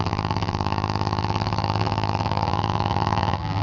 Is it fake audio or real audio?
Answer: fake